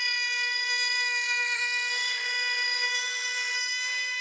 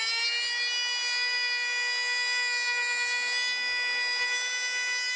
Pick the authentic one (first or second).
second